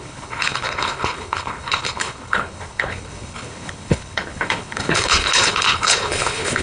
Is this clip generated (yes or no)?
yes